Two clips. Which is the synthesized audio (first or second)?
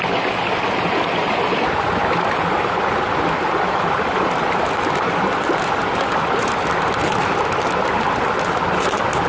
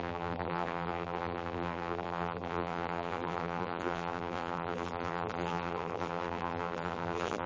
second